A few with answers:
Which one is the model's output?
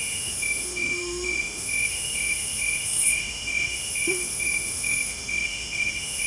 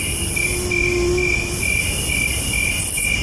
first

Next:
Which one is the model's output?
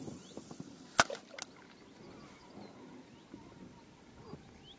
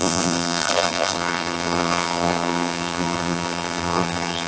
second